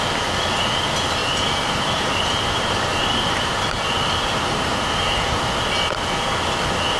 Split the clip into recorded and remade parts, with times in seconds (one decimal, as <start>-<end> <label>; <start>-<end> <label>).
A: 0.0-1.2 recorded; 1.2-5.4 remade; 5.4-7.0 recorded